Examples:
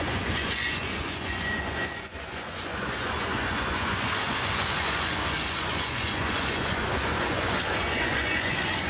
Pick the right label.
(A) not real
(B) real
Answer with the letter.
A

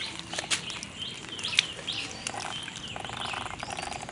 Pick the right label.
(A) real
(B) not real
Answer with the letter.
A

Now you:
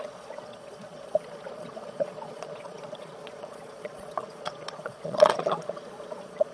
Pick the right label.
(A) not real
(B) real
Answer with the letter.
A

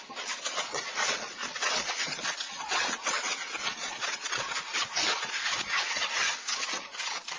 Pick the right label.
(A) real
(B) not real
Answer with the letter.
B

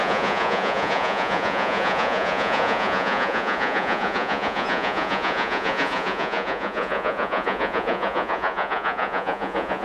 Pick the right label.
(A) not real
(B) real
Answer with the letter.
A